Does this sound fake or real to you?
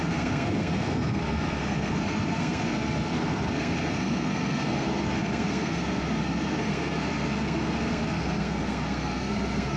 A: fake